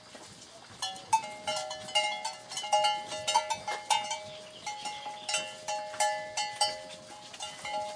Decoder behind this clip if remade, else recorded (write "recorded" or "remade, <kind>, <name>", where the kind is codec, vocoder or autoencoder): recorded